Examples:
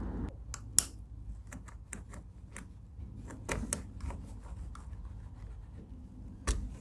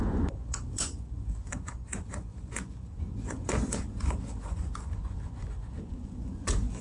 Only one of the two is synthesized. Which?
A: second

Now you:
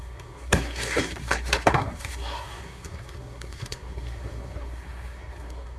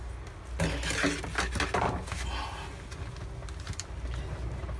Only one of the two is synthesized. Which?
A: first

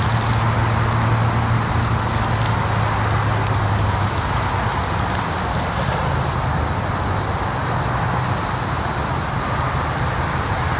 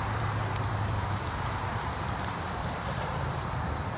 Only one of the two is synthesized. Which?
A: second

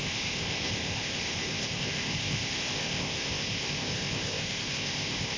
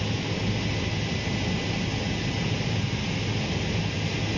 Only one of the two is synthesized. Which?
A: first